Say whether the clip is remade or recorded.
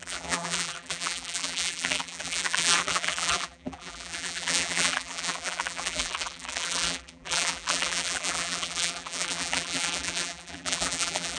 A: remade